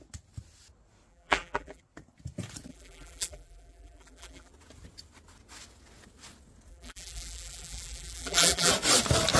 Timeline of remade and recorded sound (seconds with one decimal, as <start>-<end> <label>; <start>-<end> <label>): 0.0-1.1 recorded; 1.1-1.8 remade; 1.8-2.7 recorded; 2.7-4.5 remade; 4.5-6.7 recorded; 6.7-8.7 remade; 8.7-9.4 recorded